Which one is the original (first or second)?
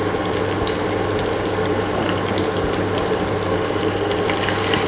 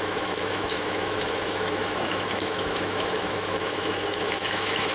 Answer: first